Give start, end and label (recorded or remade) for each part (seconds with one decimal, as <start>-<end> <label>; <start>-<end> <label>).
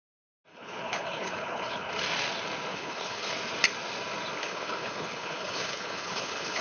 0.0-0.5 recorded; 0.5-1.9 remade; 1.9-2.7 recorded; 2.7-3.3 remade; 3.3-4.4 recorded; 4.4-6.6 remade